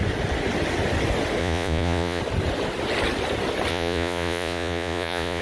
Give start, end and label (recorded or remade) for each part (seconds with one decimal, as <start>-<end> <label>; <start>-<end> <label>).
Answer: 0.0-1.4 recorded; 1.4-2.2 remade; 2.2-3.7 recorded; 3.7-5.4 remade